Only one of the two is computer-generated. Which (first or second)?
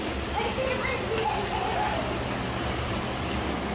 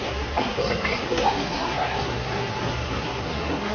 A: second